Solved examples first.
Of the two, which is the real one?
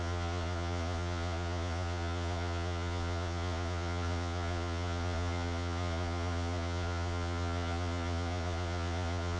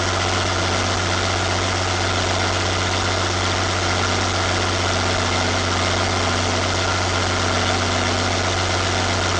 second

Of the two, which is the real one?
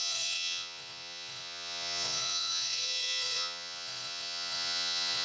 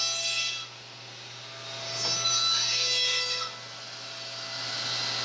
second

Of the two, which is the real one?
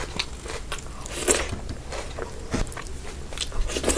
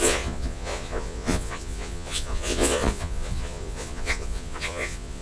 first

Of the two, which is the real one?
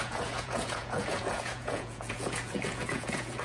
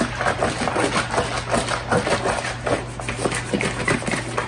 second